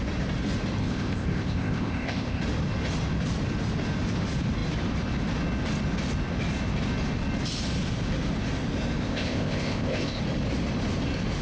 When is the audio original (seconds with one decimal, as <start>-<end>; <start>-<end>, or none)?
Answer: 0.0-0.8; 2.4-9.0; 10.2-11.4